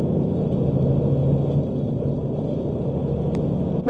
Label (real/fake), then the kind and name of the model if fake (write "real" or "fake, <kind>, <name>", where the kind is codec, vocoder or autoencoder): real